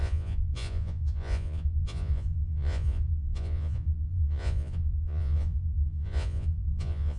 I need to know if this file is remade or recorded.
remade